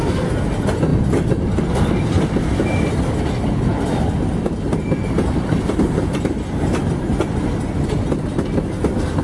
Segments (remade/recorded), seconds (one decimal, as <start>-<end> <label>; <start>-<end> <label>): 0.0-9.2 recorded